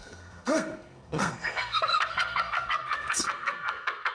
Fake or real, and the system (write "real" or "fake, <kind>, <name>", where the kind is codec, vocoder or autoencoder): fake, codec, SNAC